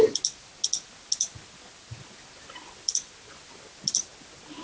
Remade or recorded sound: recorded